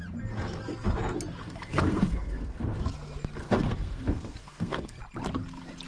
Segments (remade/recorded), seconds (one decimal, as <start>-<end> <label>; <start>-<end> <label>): 0.0-1.4 recorded; 1.4-2.8 remade; 2.8-3.4 recorded; 3.4-5.0 remade; 5.0-5.9 recorded